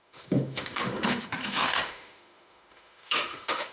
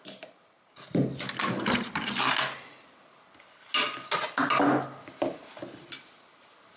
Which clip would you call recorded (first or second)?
second